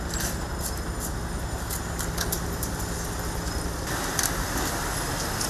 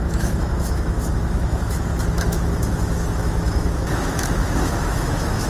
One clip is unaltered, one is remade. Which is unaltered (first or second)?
first